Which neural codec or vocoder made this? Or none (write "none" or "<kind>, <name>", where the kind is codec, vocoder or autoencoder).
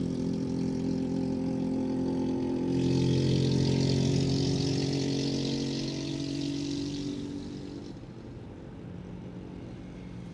none